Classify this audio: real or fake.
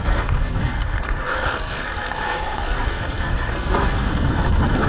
fake